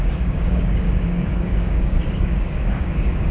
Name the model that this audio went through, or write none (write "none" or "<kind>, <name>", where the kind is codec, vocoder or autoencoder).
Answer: codec, DAC